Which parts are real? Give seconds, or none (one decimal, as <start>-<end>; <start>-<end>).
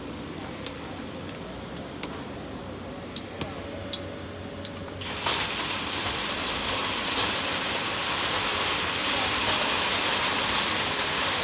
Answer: 2.6-3.8; 6.8-11.0